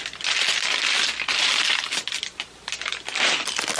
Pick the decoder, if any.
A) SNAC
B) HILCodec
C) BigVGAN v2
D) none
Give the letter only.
D